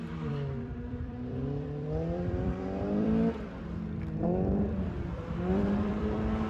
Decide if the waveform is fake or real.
fake